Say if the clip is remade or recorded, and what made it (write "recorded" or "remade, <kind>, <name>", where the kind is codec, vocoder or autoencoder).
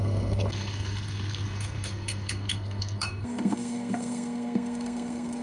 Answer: remade, codec, SNAC